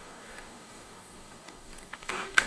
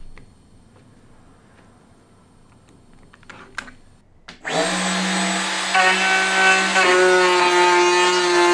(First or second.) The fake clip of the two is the first